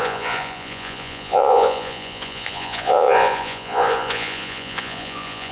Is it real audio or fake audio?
fake